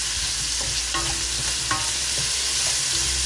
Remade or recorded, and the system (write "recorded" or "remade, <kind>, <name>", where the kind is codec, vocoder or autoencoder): recorded